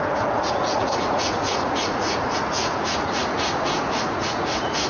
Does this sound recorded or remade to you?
remade